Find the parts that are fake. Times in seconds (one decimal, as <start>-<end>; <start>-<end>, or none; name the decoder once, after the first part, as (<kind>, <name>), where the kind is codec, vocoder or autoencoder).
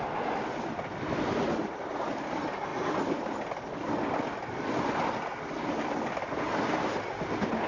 none